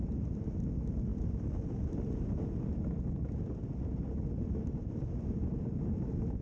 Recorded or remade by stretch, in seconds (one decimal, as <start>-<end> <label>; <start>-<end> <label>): 0.0-6.4 recorded